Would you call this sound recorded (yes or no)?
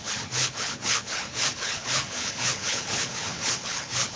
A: no